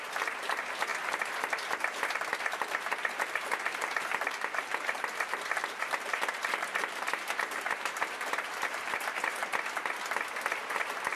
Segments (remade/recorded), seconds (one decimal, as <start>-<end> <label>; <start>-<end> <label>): 0.0-0.9 remade; 0.9-2.5 recorded; 2.5-9.4 remade; 9.4-10.6 recorded; 10.6-11.2 remade